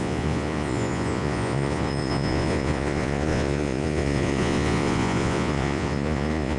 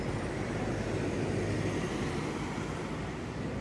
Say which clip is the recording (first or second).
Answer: second